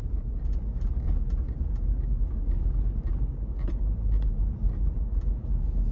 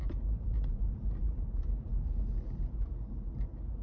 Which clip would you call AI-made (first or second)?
second